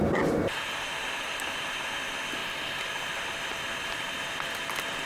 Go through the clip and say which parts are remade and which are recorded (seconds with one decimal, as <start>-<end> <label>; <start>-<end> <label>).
0.0-2.4 remade; 2.4-3.0 recorded; 3.0-5.1 remade